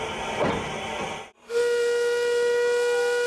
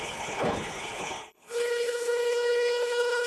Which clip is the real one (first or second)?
first